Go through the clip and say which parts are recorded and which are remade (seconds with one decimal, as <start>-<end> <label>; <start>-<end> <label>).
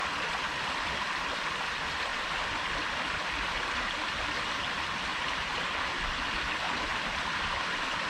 0.0-5.1 recorded; 5.1-5.6 remade; 5.6-8.1 recorded